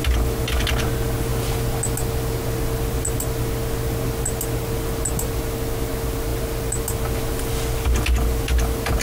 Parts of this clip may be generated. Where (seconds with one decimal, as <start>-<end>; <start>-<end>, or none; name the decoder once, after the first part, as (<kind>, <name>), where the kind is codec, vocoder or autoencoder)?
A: none